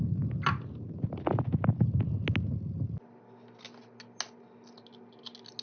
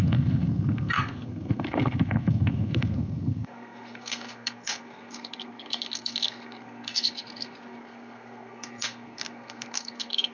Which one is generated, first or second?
second